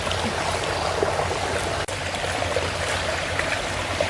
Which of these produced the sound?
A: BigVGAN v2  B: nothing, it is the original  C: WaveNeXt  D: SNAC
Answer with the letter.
B